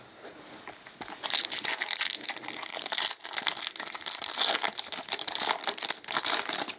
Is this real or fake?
real